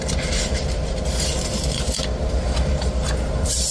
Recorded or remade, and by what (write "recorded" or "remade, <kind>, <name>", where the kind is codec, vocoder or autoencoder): remade, vocoder, BigVGAN v2